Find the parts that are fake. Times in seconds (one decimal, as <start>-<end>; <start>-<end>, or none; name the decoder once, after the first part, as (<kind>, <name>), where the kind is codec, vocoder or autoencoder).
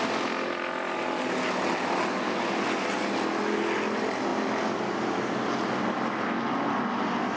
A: none